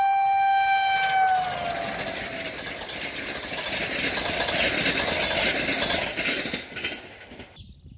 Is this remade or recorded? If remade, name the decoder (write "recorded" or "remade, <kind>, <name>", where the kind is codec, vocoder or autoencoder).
recorded